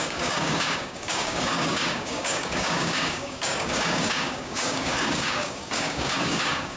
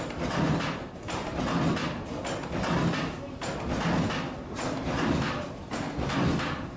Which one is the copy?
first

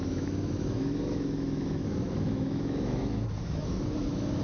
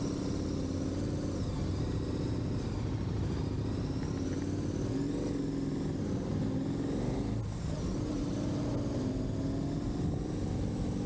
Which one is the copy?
first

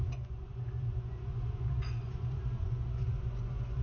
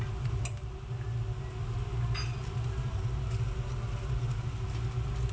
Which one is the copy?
first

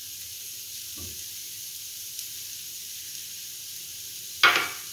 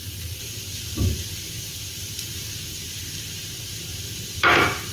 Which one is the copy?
second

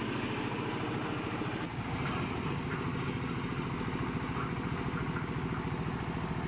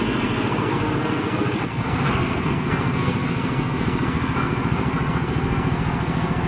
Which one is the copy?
second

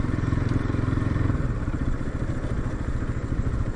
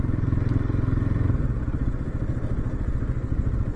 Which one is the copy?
first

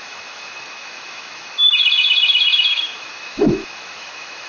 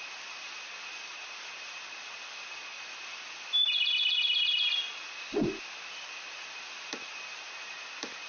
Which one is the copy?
first